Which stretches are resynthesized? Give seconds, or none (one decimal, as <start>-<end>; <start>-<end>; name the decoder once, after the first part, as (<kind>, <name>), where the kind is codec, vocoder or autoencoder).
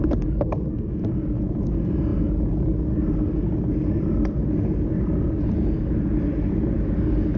none